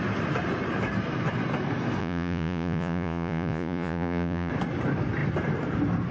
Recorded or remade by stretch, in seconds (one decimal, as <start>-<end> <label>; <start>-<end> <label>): 0.0-2.0 recorded; 2.0-4.5 remade; 4.5-6.1 recorded